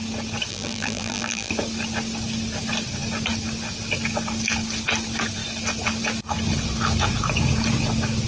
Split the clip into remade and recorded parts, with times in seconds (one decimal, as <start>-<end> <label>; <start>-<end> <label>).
0.0-0.5 recorded; 0.5-1.5 remade; 1.5-8.3 recorded